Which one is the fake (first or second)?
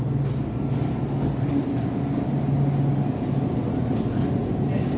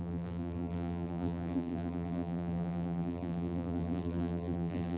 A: second